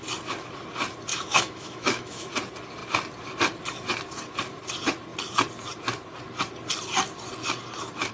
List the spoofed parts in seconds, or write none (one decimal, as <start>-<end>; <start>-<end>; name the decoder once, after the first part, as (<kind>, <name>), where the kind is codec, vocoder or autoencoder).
1.1-2.3 (autoencoder, DAC-VAE)